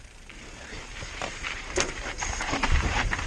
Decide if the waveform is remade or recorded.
remade